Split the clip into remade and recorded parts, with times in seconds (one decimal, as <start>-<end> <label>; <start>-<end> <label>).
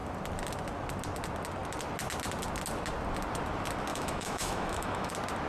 0.0-3.9 recorded; 3.9-5.1 remade; 5.1-5.5 recorded